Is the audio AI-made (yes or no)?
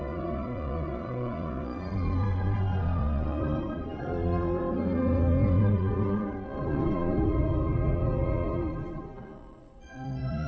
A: yes